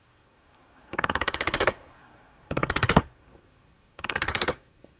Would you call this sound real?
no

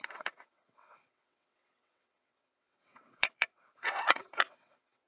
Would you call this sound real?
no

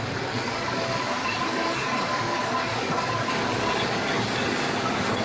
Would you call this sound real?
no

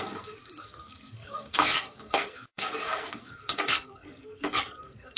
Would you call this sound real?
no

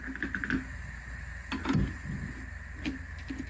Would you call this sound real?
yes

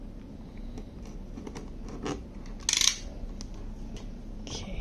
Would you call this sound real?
yes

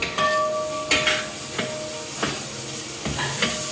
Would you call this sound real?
yes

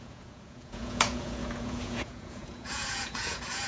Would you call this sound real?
no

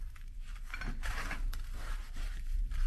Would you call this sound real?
no